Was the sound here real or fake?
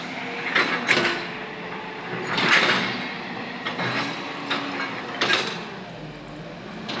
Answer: real